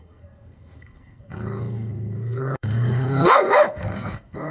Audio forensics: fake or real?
fake